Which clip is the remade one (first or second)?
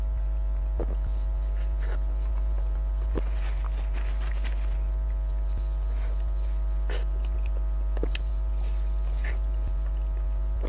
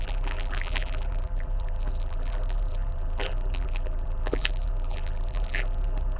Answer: second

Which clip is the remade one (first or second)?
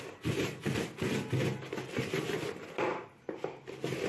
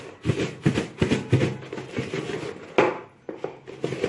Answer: first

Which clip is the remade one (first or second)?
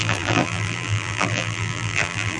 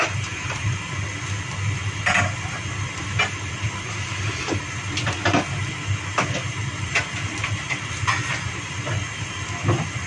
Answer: first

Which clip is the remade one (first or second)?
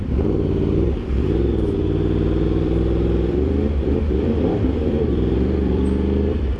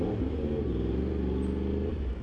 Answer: first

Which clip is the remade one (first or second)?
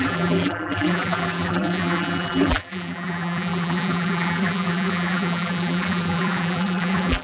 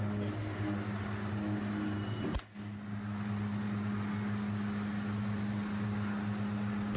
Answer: first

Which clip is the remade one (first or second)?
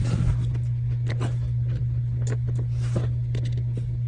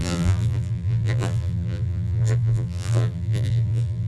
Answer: second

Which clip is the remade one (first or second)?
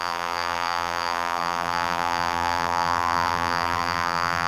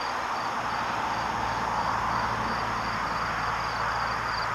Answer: first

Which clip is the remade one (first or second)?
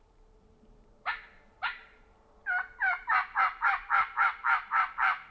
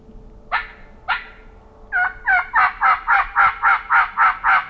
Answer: first